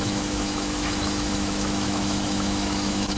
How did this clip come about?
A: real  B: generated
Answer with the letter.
B